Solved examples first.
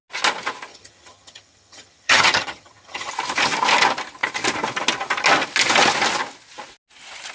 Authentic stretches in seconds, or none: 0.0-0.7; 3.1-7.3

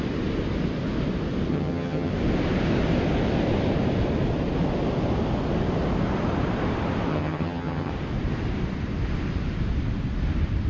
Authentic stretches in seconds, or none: 0.0-1.5; 2.1-7.1; 7.9-10.7

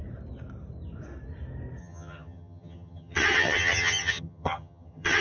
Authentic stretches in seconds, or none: 0.0-1.8

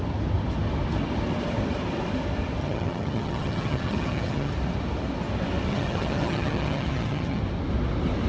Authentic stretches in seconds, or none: 0.0-2.6; 4.5-5.7; 7.4-8.3

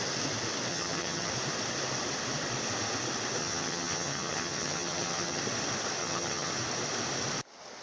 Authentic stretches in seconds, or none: 0.0-0.7; 1.3-3.4; 5.4-6.0; 6.5-7.8

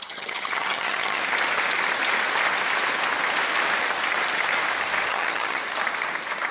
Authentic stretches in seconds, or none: 1.2-5.1; 5.6-6.5

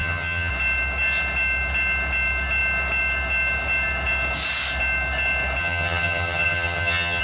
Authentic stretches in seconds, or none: 0.5-5.6

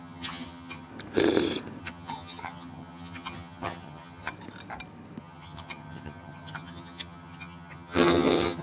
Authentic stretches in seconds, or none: 0.9-1.8; 4.3-5.2